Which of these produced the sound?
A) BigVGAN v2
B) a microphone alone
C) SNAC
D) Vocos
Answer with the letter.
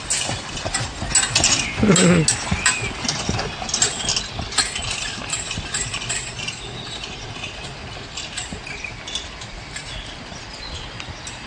B